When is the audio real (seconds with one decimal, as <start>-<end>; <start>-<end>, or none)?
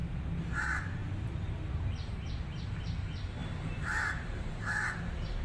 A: none